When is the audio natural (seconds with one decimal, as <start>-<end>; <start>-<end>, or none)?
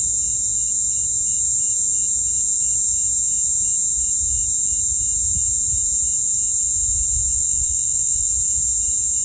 0.0-7.3; 8.3-9.2